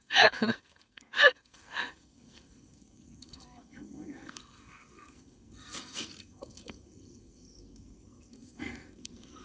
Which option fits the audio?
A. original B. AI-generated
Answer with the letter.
B